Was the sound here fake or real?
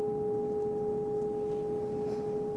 real